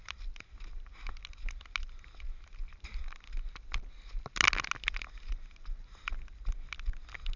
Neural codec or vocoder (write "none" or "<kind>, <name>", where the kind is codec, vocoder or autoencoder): none